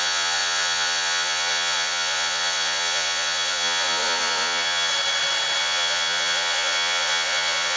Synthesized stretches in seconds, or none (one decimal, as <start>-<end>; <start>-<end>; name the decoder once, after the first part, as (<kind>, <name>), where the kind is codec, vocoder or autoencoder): 0.0-4.9 (vocoder, Vocos); 5.6-7.8